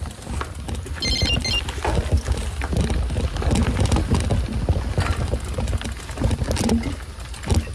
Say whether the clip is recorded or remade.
recorded